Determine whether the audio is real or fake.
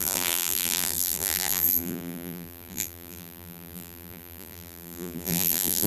fake